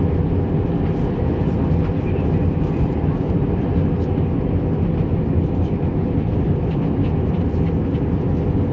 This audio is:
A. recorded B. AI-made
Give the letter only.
A